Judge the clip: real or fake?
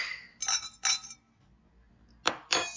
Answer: real